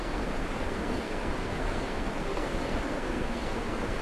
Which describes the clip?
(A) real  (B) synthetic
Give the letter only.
B